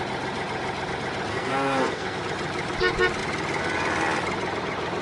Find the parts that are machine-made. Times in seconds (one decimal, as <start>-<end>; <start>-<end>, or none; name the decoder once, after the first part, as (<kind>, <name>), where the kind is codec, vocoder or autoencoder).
1.3-2.2 (codec, SNAC)